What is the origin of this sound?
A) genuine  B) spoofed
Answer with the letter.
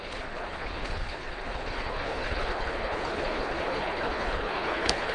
B